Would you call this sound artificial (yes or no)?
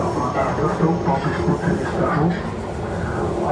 no